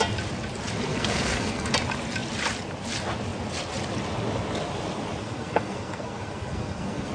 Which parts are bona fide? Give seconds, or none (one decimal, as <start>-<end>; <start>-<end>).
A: 0.0-0.9; 1.7-5.2